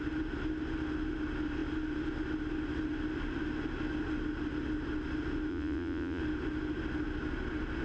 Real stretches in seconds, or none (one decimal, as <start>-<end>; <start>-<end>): 0.0-5.5; 6.2-7.8